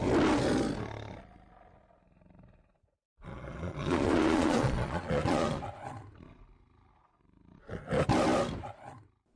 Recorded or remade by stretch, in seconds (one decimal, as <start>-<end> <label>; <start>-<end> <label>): 0.0-3.3 recorded; 3.3-5.6 remade; 5.6-9.4 recorded